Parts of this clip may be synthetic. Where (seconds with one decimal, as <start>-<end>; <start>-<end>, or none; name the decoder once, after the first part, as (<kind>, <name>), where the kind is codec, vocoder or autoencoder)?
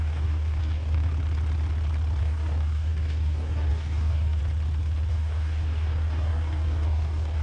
0.0-1.1 (codec, DAC); 2.2-4.4; 5.1-7.4